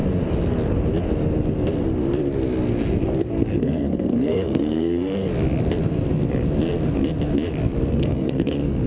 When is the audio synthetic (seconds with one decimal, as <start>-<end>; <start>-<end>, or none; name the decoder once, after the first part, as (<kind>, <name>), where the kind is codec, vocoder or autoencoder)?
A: 3.3-5.3 (codec, SNAC); 7.9-8.9